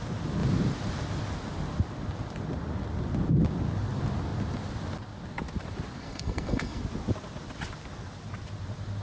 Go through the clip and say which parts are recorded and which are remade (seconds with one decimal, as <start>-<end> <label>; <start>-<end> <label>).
0.0-6.0 recorded; 6.0-6.8 remade; 6.8-9.0 recorded